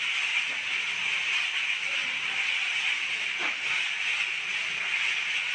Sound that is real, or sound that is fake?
real